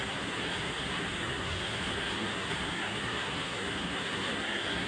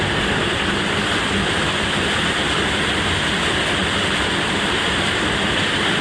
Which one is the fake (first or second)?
first